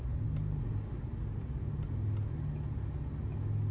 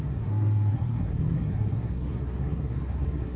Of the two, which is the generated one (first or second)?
second